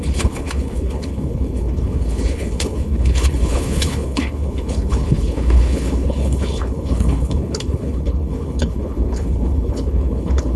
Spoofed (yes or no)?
yes